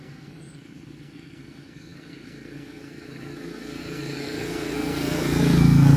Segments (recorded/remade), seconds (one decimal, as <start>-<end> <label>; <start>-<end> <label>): 0.0-6.0 remade